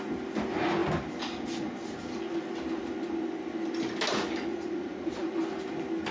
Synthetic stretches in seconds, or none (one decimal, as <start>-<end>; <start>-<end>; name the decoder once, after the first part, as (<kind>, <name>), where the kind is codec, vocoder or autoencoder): 4.5-5.3 (vocoder, Vocos)